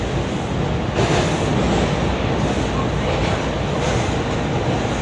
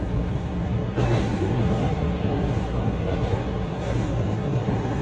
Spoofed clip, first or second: second